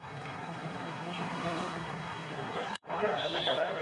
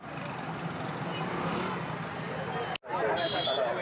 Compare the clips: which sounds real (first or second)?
second